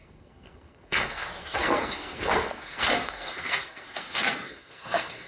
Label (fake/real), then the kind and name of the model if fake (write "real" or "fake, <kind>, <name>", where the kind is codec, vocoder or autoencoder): fake, codec, SNAC